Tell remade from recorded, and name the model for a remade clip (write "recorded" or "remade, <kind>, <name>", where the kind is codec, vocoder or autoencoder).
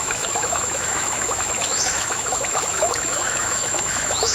remade, autoencoder, DAC-VAE